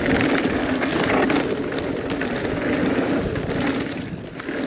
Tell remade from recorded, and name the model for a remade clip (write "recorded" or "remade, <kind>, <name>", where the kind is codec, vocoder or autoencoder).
recorded